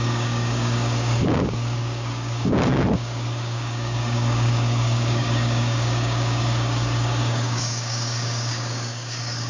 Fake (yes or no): yes